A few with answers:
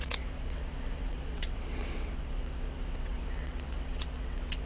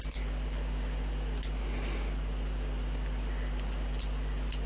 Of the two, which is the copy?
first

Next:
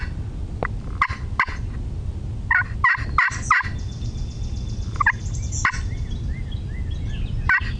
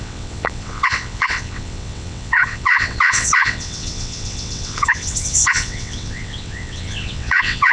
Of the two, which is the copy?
second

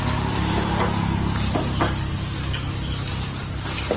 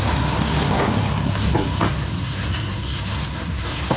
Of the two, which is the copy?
second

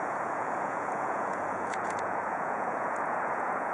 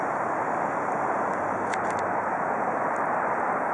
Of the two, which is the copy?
first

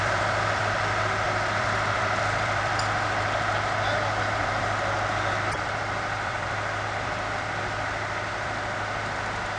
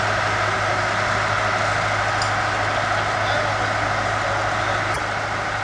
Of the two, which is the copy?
first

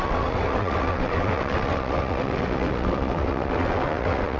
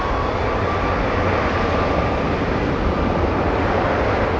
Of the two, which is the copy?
first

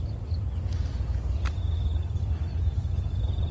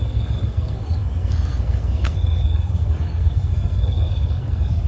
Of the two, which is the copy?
second